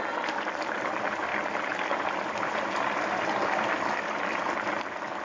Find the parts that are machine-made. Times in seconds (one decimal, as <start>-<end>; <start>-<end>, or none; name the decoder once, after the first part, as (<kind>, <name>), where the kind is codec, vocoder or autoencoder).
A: none